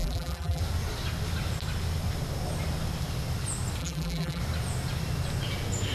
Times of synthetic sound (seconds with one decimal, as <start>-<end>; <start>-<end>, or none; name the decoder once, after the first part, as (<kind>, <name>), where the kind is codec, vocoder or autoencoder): 0.0-0.6 (vocoder, BigVGAN v2); 3.8-4.4